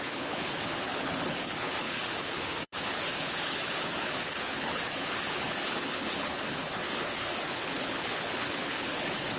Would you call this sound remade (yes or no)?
yes